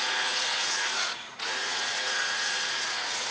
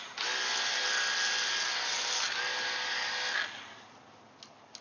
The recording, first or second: second